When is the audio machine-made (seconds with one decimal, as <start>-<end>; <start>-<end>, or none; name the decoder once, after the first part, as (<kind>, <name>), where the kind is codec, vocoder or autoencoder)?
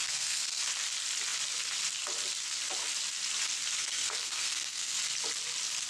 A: 0.0-0.6 (codec, SNAC); 3.8-5.0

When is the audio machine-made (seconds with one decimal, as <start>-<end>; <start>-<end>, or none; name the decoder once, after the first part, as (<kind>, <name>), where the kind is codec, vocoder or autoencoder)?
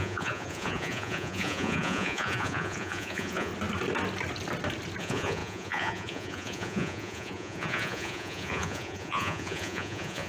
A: 0.0-3.5 (vocoder, Vocos); 5.0-10.3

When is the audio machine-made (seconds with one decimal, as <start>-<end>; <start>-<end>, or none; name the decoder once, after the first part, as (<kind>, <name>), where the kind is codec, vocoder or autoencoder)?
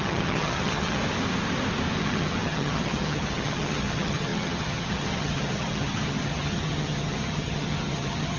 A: 0.0-1.0 (vocoder, HiFi-GAN); 2.0-8.4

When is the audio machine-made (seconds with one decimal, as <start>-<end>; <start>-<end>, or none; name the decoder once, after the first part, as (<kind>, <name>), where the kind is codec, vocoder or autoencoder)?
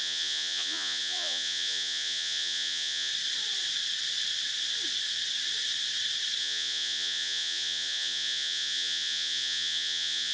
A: 0.0-3.1 (vocoder, Vocos); 6.4-10.3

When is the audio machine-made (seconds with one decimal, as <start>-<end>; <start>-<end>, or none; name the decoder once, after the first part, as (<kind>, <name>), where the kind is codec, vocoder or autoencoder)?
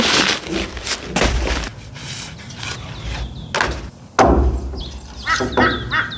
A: none